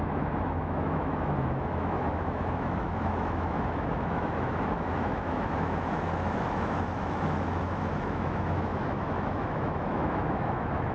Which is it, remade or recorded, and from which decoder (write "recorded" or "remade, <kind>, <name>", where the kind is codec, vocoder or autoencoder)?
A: remade, autoencoder, DAC-VAE